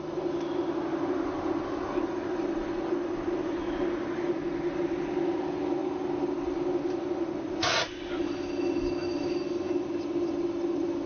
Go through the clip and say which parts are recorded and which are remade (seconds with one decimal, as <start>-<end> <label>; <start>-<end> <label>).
0.0-11.1 recorded